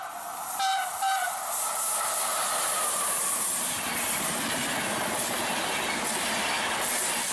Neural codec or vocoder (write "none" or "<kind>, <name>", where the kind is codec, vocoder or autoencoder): none